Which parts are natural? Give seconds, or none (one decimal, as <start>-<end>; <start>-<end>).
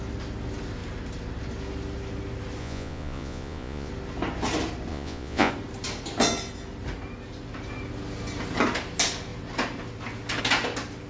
0.0-2.6; 3.9-4.9; 5.5-11.1